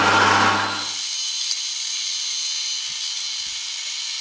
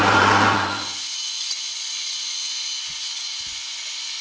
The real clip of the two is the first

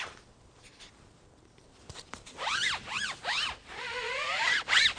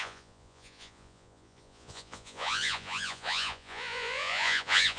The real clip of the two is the first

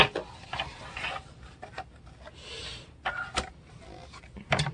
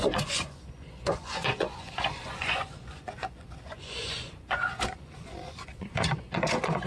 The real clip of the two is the first